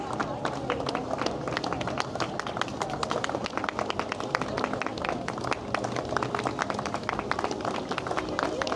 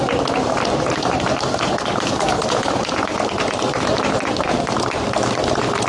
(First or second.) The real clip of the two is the first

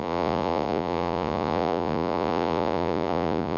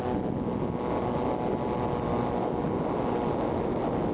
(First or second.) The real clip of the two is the second